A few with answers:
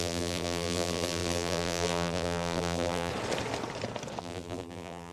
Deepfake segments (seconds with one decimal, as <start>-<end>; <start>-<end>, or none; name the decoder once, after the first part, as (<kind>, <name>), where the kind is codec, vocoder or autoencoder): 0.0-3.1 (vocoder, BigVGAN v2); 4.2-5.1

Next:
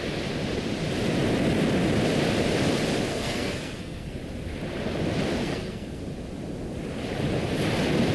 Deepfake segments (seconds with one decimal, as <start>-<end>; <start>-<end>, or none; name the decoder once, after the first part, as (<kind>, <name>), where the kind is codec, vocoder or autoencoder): 3.1-4.2 (codec, SNAC); 5.4-6.0

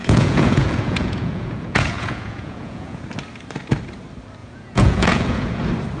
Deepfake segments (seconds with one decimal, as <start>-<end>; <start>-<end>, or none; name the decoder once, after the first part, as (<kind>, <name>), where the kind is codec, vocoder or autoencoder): 0.0-3.0 (vocoder, Vocos); 4.4-5.6